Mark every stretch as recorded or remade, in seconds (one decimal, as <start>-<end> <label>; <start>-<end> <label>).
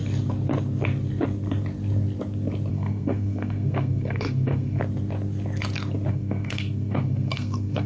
0.0-2.7 recorded; 2.7-4.8 remade; 4.8-6.1 recorded; 6.1-7.9 remade